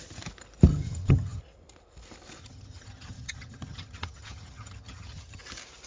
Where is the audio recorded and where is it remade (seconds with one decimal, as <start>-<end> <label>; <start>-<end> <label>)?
0.0-0.7 recorded; 0.7-1.4 remade; 1.4-2.4 recorded; 2.4-5.4 remade; 5.4-5.9 recorded